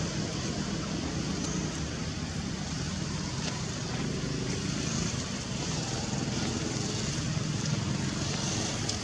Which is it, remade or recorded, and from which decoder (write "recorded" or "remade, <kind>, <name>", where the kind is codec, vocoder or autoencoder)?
recorded